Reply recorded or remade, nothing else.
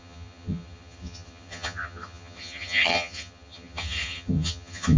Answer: remade